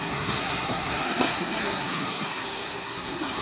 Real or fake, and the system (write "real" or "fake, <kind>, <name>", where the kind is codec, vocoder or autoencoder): fake, codec, SNAC